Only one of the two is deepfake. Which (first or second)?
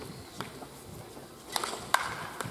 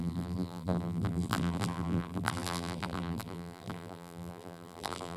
second